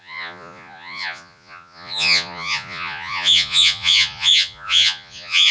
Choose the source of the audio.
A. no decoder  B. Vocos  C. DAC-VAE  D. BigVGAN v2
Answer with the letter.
B